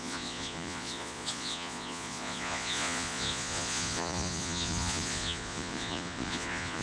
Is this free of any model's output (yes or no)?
no